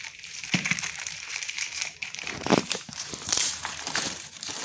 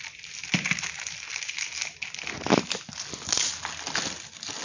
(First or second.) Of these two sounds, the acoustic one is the second